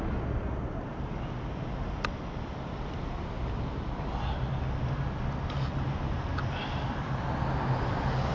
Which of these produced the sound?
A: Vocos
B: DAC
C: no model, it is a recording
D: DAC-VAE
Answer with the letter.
C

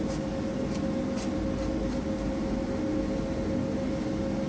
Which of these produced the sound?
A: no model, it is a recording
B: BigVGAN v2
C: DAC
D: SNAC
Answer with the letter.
A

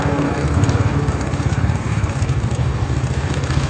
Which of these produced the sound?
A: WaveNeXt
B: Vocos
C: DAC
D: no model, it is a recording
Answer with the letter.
C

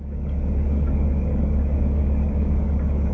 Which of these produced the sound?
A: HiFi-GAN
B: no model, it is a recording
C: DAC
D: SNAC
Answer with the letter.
C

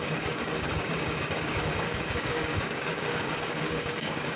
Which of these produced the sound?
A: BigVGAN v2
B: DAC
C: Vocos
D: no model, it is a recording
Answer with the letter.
B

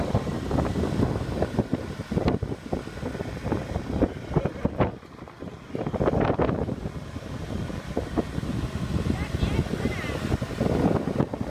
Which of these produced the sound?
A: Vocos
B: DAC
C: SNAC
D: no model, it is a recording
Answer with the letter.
D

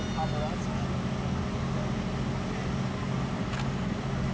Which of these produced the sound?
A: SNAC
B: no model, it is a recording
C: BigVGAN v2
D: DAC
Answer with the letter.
B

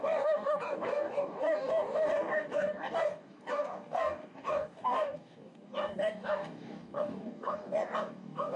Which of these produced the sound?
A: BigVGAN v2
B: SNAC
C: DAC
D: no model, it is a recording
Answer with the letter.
C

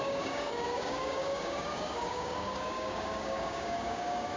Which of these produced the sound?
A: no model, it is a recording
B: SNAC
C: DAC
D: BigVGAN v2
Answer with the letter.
C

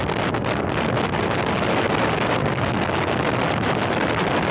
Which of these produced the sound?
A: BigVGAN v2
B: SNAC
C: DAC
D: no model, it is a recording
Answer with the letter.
D